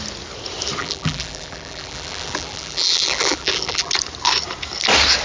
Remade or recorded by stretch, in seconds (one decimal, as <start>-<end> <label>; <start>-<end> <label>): 0.0-0.8 recorded; 0.8-3.9 remade; 3.9-5.2 recorded